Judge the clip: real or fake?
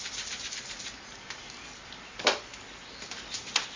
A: real